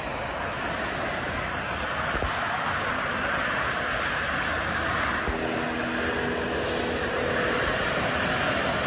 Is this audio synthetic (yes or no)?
no